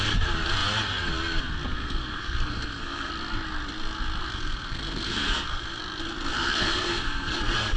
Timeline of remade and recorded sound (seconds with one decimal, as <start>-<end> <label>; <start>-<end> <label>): 0.0-1.8 recorded; 1.8-3.1 remade; 3.1-4.2 recorded; 4.2-5.8 remade; 5.8-6.3 recorded; 6.3-7.8 remade